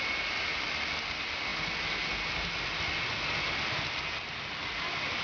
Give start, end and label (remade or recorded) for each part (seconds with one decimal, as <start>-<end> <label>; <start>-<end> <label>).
0.0-5.2 recorded